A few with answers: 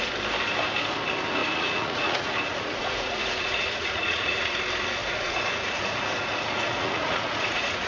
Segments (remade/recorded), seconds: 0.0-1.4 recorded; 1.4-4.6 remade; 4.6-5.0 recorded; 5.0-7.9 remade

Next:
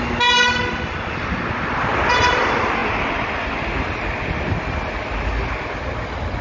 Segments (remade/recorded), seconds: 0.0-6.4 recorded

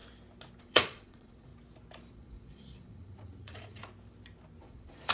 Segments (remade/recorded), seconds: 0.0-0.6 recorded; 0.6-1.5 remade; 1.5-2.1 recorded; 2.1-3.8 remade; 3.8-4.6 recorded; 4.6-5.1 remade

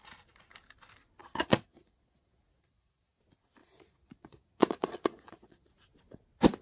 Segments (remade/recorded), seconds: 0.0-1.2 recorded; 1.2-3.2 remade; 3.2-3.6 recorded; 3.6-5.7 remade; 5.7-6.6 recorded

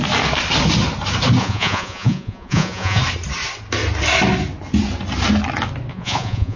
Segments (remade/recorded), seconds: 0.0-1.4 recorded; 1.4-3.0 remade; 3.0-5.9 recorded; 5.9-6.6 remade

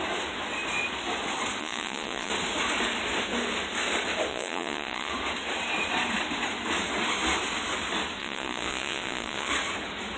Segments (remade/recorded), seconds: 0.0-1.6 recorded; 1.6-2.3 remade; 2.3-4.3 recorded; 4.3-5.1 remade; 5.1-8.2 recorded; 8.2-9.5 remade; 9.5-10.2 recorded

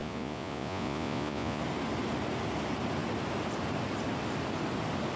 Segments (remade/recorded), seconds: 0.0-1.6 remade; 1.6-5.2 recorded